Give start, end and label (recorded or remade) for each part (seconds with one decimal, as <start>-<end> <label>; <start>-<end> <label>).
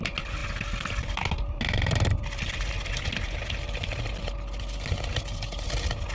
0.0-6.1 recorded